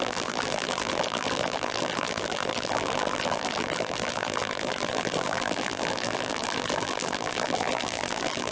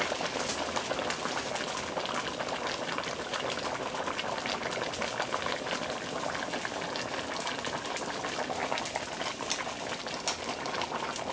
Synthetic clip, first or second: first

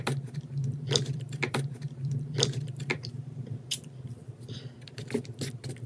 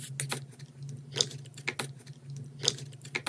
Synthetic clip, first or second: first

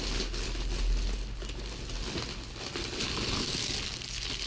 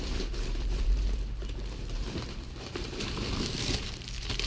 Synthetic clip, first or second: second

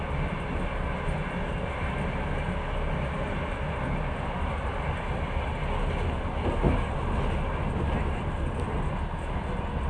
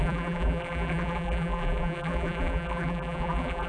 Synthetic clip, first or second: second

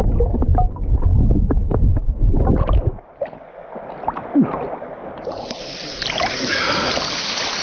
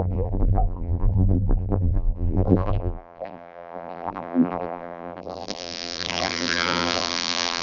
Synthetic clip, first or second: second